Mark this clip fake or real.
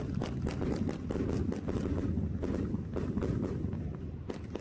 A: real